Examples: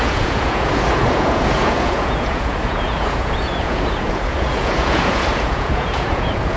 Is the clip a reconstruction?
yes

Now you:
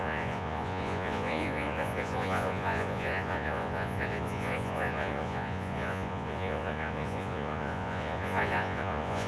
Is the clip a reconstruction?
yes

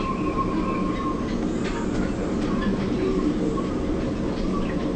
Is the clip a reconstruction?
no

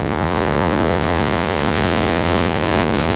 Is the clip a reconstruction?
yes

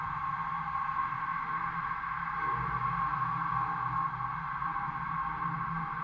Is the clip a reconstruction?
no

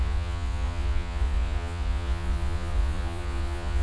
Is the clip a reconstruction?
yes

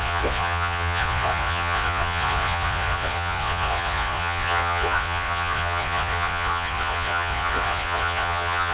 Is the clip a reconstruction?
yes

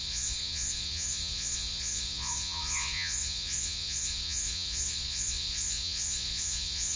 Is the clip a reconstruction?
yes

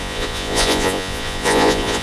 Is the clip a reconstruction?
yes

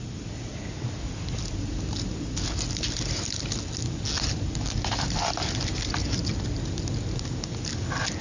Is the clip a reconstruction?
no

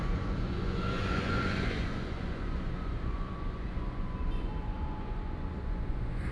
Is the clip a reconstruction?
yes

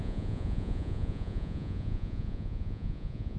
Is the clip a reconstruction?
yes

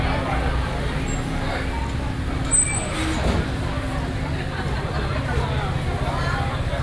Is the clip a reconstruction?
no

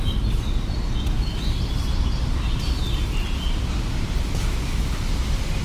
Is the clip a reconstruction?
no